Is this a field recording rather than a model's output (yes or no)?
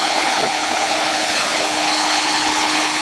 no